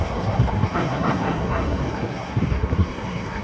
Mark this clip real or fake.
fake